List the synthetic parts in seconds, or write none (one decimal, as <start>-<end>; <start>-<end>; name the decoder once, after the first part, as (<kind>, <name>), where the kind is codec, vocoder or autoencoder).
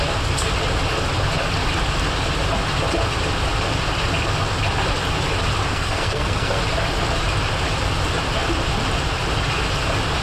5.7-6.6 (codec, SNAC)